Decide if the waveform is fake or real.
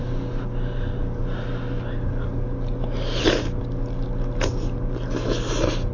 real